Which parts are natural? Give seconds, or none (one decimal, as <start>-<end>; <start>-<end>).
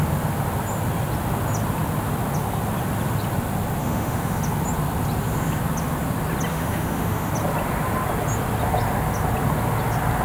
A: 0.0-3.8; 4.4-6.5; 7.3-10.2